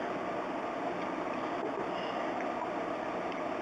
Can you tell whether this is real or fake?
real